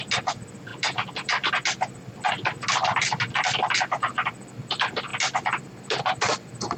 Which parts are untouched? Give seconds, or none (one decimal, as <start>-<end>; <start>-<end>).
0.0-6.8